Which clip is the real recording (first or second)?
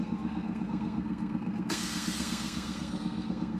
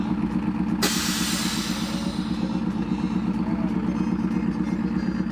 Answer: second